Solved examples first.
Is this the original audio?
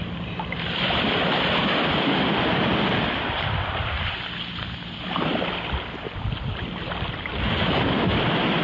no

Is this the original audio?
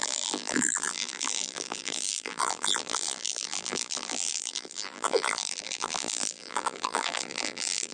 no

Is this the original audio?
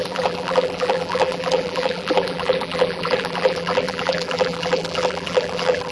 no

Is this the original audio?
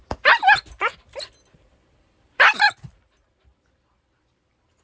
no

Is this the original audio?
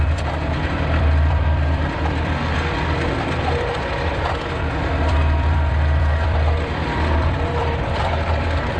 no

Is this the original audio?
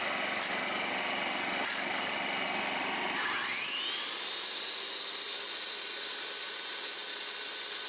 yes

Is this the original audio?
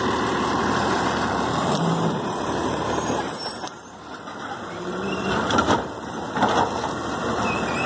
no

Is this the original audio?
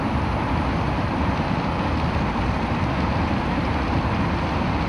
yes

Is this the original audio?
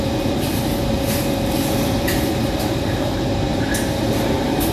no